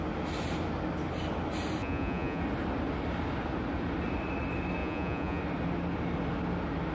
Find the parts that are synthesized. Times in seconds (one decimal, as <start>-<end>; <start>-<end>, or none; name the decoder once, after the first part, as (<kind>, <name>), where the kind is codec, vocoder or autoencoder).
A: 1.8-2.4 (vocoder, Vocos); 4.8-5.4